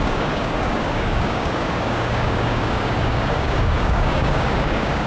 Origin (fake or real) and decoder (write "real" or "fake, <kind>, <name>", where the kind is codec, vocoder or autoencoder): fake, codec, DAC